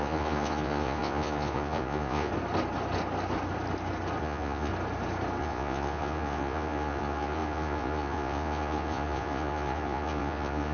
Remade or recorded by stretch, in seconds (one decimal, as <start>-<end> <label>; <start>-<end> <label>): 0.0-2.3 remade; 2.3-4.2 recorded; 4.2-4.7 remade; 4.7-5.4 recorded; 5.4-10.7 remade